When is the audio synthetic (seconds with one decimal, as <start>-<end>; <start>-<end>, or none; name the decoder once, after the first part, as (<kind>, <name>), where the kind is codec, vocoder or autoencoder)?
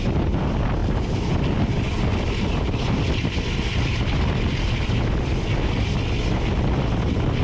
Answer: none